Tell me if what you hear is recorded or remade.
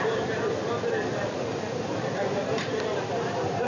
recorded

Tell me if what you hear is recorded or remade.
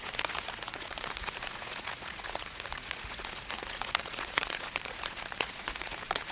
remade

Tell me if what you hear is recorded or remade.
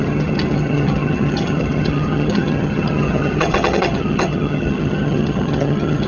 remade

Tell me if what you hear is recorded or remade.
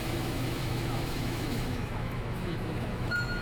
remade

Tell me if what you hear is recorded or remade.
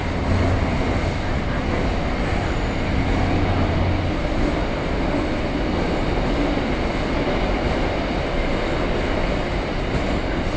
recorded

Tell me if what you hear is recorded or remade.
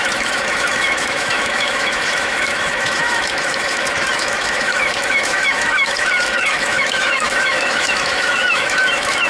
remade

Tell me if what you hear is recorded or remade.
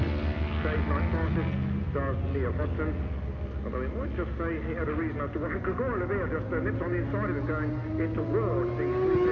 recorded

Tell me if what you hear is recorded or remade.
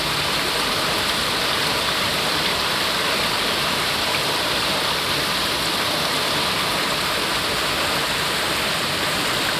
recorded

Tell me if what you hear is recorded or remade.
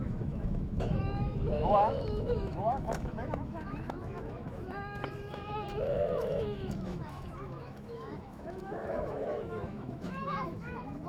remade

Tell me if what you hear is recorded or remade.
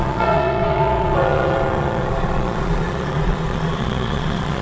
remade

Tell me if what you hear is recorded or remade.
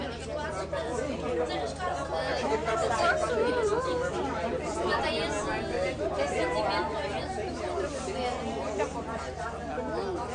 recorded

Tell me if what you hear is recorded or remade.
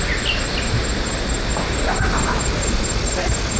recorded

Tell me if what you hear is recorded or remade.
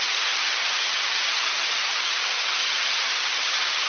remade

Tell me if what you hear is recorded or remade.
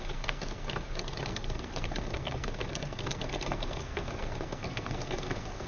remade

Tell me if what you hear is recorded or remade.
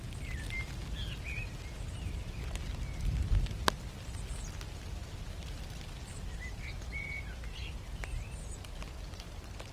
recorded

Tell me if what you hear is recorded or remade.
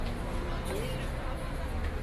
recorded